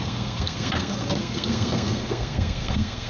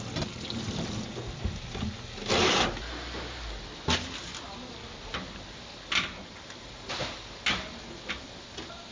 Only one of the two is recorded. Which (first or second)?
second